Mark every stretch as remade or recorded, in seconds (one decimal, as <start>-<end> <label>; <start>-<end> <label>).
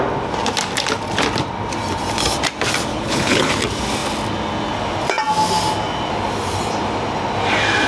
0.0-2.9 recorded; 2.9-3.5 remade; 3.5-7.9 recorded